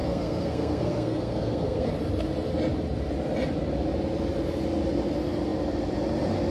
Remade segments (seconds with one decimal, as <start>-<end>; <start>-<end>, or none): 0.0-1.9